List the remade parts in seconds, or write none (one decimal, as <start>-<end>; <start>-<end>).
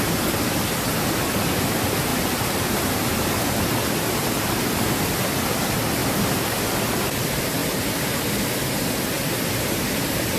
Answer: 2.1-3.3; 6.0-6.6; 7.6-8.7